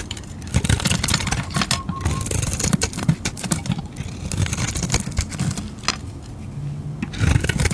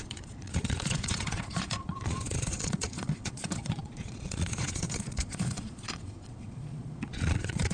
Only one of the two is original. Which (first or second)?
first